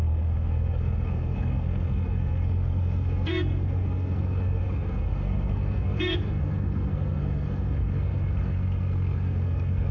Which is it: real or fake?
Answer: fake